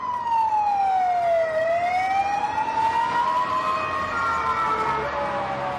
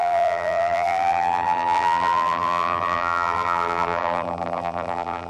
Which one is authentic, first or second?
first